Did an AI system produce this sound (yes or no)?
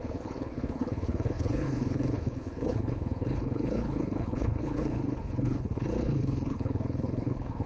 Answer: yes